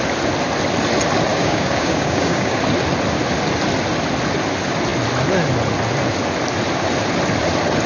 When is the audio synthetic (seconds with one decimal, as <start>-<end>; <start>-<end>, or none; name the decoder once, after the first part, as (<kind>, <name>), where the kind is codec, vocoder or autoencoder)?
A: 1.3-2.6 (codec, DAC)